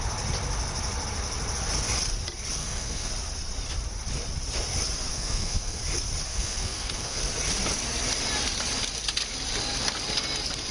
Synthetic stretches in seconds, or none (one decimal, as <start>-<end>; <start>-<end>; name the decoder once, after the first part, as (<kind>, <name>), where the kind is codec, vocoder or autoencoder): 2.6-3.1 (codec, SNAC); 5.1-5.8; 6.3-7.2